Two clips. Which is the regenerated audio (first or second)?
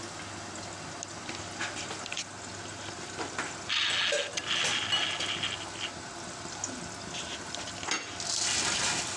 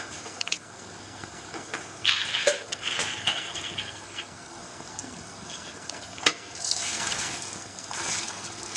second